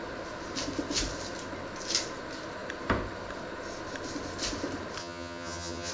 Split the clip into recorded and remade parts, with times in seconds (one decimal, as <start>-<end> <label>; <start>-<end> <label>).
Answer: 0.0-5.0 recorded; 5.0-5.9 remade

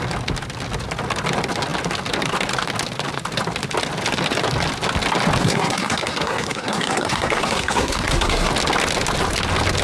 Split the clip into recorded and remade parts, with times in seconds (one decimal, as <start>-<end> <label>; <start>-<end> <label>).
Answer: 0.0-5.4 recorded; 5.4-8.5 remade; 8.5-9.8 recorded

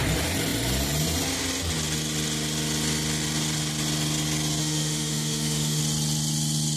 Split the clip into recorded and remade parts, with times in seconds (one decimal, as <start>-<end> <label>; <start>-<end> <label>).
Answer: 0.0-4.6 recorded; 4.6-5.8 remade; 5.8-6.8 recorded

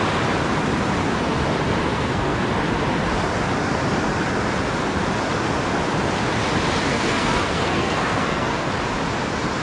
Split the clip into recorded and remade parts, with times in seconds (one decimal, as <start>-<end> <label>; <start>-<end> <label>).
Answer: 0.0-1.8 recorded; 1.8-2.4 remade; 2.4-6.9 recorded; 6.9-8.7 remade; 8.7-9.6 recorded

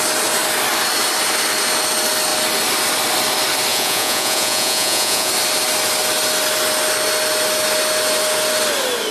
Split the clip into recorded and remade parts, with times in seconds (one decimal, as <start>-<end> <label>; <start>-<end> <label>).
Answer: 0.0-3.7 recorded; 3.7-5.3 remade; 5.3-9.1 recorded

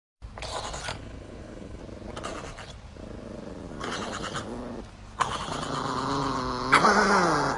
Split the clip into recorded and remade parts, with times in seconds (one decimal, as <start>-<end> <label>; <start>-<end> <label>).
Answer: 0.0-0.9 recorded; 0.9-1.8 remade; 1.8-7.6 recorded

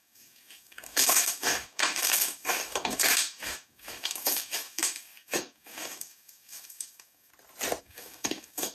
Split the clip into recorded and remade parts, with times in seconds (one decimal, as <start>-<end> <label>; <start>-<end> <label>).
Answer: 0.0-7.3 remade; 7.3-7.8 recorded; 7.8-8.7 remade

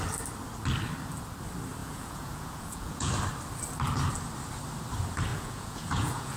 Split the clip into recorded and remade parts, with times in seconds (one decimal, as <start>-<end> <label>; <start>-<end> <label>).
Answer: 0.0-1.8 recorded; 1.8-3.1 remade; 3.1-5.3 recorded; 5.3-6.4 remade